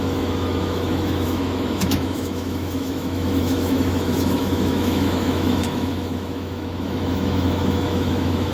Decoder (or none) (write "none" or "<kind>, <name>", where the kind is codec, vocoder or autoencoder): autoencoder, DAC-VAE